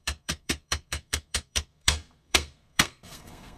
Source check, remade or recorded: remade